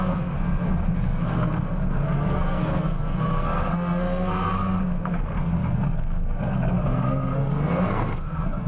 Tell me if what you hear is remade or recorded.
remade